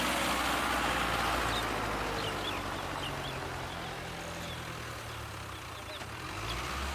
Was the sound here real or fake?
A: real